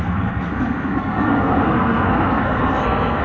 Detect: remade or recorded remade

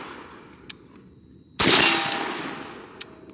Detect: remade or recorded recorded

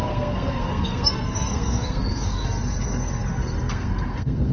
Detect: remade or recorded remade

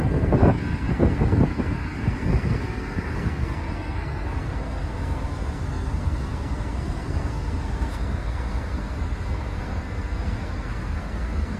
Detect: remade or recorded remade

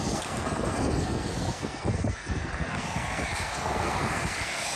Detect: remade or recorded remade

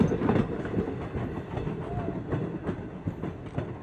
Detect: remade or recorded recorded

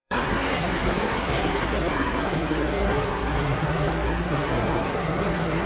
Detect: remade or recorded remade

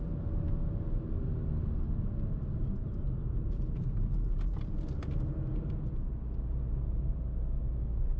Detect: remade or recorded recorded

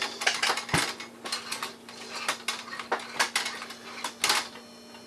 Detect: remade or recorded recorded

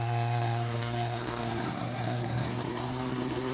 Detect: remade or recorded remade